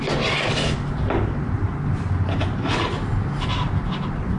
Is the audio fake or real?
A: real